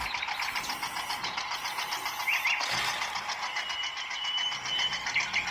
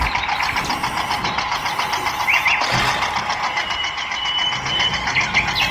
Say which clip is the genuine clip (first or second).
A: first